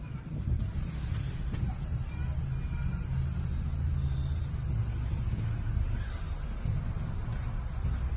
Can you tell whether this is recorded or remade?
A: recorded